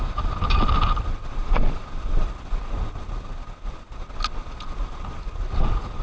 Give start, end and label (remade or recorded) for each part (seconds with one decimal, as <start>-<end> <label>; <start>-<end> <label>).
0.0-6.0 recorded